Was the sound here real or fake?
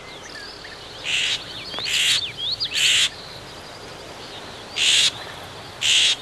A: real